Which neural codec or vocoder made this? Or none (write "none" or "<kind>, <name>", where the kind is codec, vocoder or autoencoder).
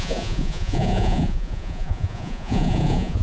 vocoder, Vocos